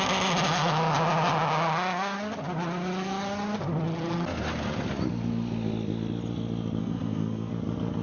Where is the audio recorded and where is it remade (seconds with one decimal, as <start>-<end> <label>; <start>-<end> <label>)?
0.0-6.8 recorded; 6.8-7.5 remade; 7.5-8.0 recorded